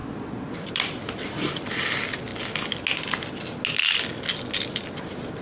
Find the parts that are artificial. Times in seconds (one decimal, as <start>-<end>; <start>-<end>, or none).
0.0-1.7